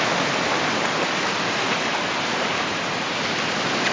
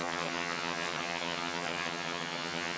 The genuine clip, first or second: first